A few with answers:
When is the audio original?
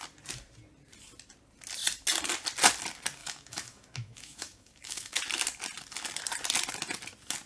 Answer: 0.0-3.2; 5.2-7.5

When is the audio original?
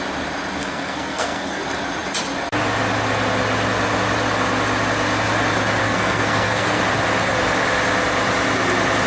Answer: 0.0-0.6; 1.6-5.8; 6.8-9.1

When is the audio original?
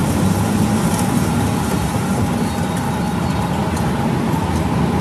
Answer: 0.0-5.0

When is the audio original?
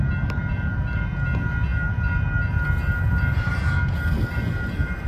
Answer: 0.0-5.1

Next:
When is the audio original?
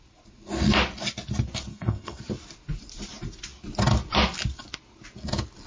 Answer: 0.0-1.7; 2.2-5.7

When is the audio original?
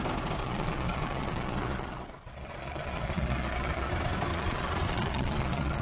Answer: 0.0-0.4; 3.9-4.3